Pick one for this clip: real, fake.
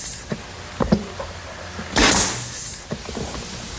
real